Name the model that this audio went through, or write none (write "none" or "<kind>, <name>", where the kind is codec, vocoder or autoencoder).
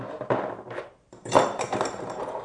vocoder, BigVGAN v2